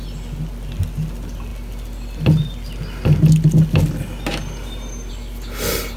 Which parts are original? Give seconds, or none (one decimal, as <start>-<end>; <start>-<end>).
0.0-6.0